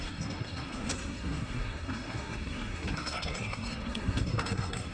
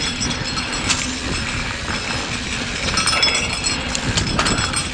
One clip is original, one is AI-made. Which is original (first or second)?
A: second